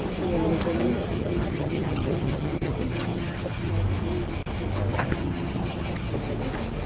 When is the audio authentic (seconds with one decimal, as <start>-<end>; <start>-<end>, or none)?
0.0-1.0; 3.7-4.9; 6.1-6.9